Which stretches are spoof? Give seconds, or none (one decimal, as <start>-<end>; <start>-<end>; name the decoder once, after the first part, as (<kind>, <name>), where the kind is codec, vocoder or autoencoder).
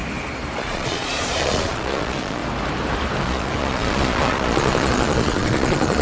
0.6-2.4 (vocoder, Vocos); 3.2-6.0